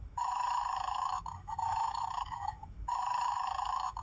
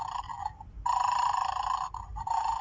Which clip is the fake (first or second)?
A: first